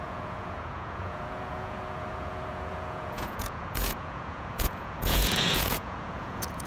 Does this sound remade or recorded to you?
remade